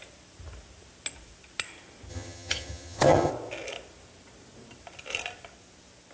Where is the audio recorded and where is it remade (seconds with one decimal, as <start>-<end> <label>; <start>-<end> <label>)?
0.0-2.1 recorded; 2.1-3.3 remade; 3.3-6.1 recorded